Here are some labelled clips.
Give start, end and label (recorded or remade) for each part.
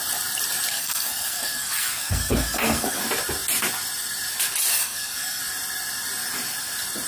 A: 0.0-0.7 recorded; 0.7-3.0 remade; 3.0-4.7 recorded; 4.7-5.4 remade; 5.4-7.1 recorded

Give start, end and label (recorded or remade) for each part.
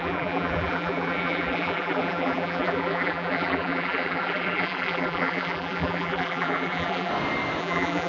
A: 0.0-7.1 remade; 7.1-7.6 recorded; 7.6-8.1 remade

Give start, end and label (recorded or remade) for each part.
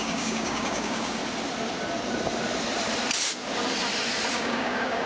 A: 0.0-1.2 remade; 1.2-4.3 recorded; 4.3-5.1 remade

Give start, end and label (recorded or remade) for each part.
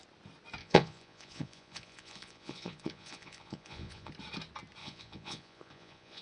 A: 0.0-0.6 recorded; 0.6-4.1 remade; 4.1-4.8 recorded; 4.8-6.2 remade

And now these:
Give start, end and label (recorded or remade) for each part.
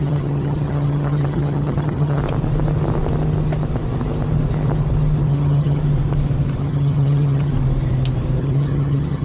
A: 0.0-2.2 remade; 2.2-5.3 recorded; 5.3-5.8 remade; 5.8-6.6 recorded; 6.6-7.5 remade; 7.5-8.4 recorded; 8.4-9.2 remade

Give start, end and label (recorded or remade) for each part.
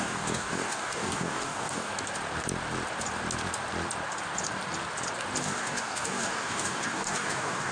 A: 0.0-1.9 remade; 1.9-5.4 recorded; 5.4-7.7 remade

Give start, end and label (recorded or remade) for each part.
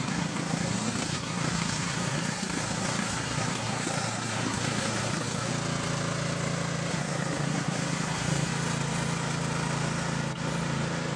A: 0.0-5.5 remade; 5.5-6.9 recorded; 6.9-8.5 remade; 8.5-11.2 recorded